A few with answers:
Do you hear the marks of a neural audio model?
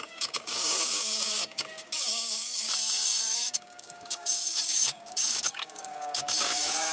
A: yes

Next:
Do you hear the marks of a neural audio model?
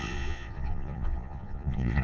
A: yes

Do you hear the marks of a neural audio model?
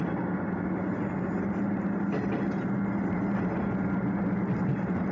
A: no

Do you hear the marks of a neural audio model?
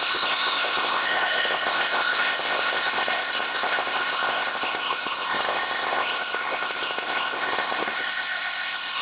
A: yes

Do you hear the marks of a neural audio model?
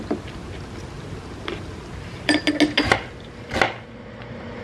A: no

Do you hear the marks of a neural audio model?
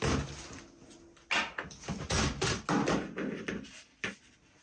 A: no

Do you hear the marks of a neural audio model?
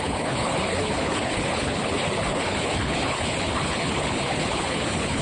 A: yes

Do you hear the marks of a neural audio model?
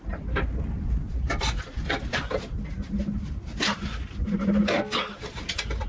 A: no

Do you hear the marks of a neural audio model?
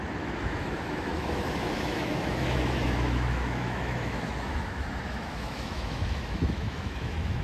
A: yes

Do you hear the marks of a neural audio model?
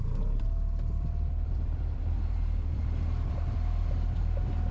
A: yes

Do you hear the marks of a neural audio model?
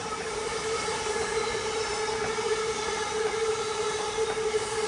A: yes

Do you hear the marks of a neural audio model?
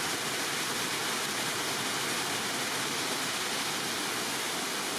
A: no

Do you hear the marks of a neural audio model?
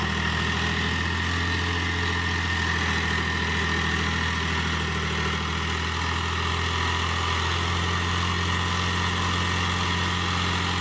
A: no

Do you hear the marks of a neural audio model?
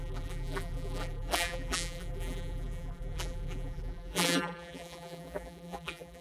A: yes